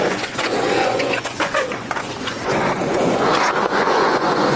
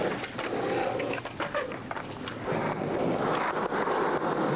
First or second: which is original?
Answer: second